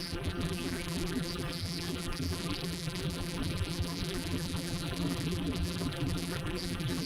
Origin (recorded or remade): remade